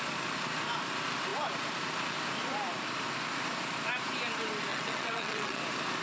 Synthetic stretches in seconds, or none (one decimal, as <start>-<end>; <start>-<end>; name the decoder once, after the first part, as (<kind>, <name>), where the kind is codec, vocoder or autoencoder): 4.7-5.6 (vocoder, WaveNeXt)